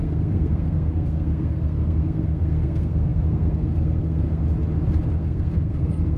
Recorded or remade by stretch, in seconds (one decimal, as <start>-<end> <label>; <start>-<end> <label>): 0.0-4.4 remade; 4.4-5.1 recorded; 5.1-6.2 remade